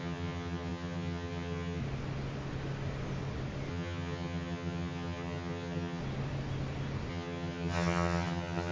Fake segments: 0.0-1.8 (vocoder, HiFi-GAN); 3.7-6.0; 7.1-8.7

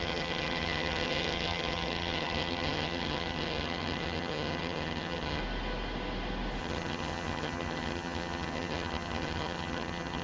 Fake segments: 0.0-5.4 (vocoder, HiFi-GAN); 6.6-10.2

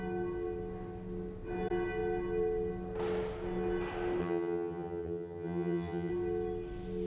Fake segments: 4.2-6.1 (vocoder, HiFi-GAN)

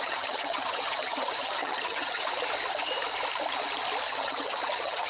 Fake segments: 0.0-2.3 (vocoder, HiFi-GAN); 4.1-5.1

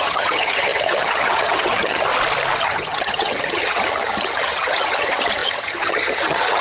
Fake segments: 0.0-2.1 (vocoder, HiFi-GAN); 2.6-6.6